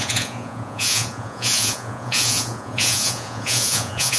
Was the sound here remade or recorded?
remade